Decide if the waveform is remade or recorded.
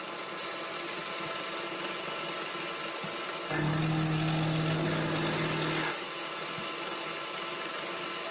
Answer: recorded